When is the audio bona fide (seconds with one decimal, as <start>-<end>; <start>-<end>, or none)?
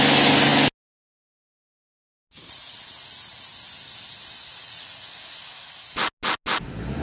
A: 0.0-4.5; 5.1-7.0